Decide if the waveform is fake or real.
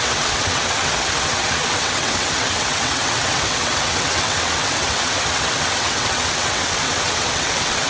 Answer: fake